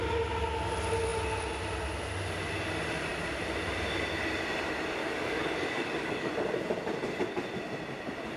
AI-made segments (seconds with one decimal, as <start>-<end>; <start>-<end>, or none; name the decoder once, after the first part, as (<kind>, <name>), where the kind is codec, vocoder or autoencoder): 5.0-6.3 (codec, DAC)